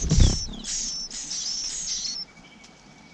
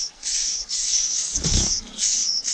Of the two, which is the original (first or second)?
first